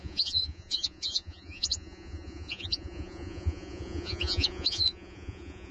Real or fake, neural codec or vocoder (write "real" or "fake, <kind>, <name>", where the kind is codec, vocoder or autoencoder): fake, vocoder, Vocos